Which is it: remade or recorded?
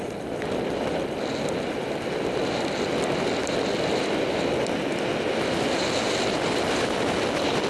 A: recorded